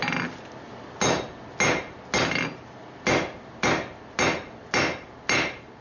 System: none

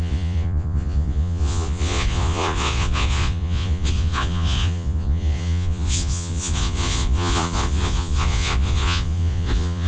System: vocoder, Vocos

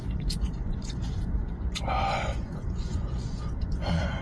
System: vocoder, Vocos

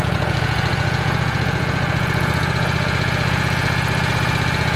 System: vocoder, Vocos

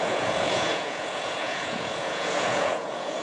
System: vocoder, Vocos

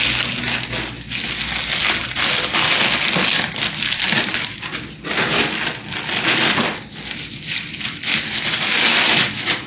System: none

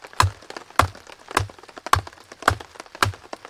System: none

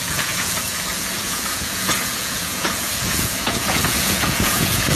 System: vocoder, Vocos